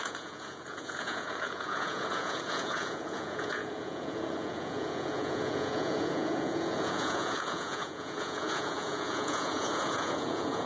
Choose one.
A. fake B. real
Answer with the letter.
A